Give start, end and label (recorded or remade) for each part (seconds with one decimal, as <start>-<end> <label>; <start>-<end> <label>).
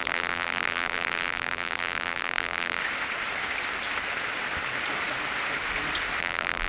0.0-2.8 remade; 2.8-6.2 recorded; 6.2-6.7 remade